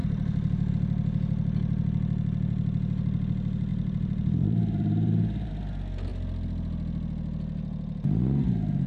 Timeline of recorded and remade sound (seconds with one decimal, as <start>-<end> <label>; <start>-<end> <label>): 0.0-0.7 remade; 0.7-3.7 recorded; 3.7-5.5 remade; 5.5-8.9 recorded